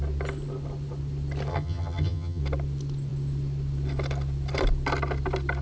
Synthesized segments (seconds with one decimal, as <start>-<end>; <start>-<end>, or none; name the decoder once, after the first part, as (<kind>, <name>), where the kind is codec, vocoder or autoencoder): 1.5-2.4 (vocoder, HiFi-GAN)